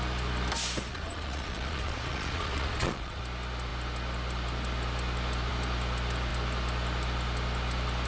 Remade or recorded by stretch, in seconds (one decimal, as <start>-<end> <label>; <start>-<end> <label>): 0.0-0.9 recorded; 0.9-3.2 remade; 3.2-8.1 recorded

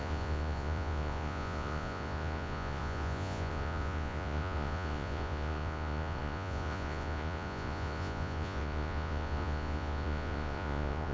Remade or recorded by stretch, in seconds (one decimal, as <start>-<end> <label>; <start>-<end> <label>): 0.0-11.1 remade

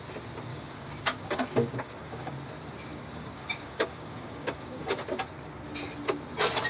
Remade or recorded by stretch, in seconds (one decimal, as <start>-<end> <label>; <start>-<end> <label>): 0.0-0.5 recorded; 0.5-2.3 remade; 2.3-2.9 recorded; 2.9-5.0 remade; 5.0-6.7 recorded

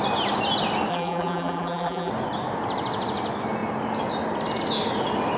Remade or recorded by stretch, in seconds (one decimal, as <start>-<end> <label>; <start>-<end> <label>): 0.0-0.9 recorded; 0.9-2.1 remade; 2.1-5.4 recorded